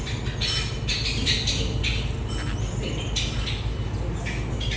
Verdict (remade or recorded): recorded